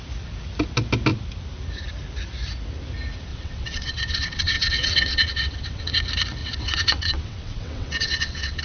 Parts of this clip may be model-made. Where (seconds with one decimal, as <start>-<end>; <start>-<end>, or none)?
3.3-5.9; 6.4-8.6